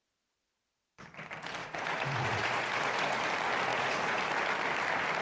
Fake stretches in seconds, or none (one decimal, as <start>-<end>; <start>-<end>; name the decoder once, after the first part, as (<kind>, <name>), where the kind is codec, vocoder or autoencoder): 1.6-3.2 (vocoder, Vocos); 3.7-4.2

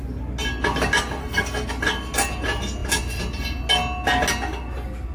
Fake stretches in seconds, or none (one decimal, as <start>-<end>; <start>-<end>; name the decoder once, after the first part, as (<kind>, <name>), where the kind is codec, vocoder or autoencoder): 1.2-1.7 (codec, SNAC)

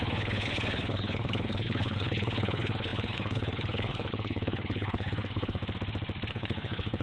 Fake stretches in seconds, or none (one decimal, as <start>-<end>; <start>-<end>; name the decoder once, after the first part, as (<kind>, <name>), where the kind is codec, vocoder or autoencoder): 0.0-5.6 (codec, HILCodec); 6.3-7.0

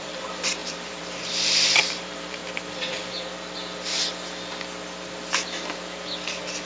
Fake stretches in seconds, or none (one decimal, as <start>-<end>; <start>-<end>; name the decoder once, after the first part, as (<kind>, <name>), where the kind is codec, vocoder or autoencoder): 0.0-2.4 (vocoder, BigVGAN v2)

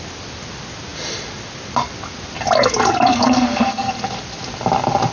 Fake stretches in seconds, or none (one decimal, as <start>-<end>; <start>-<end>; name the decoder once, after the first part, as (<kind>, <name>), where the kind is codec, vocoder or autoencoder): 3.1-3.9 (codec, SNAC)

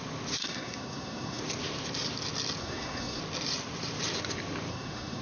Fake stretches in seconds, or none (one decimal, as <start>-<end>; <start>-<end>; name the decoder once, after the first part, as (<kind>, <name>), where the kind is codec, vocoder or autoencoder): 0.4-1.4 (codec, SNAC); 2.6-3.2; 4.7-5.2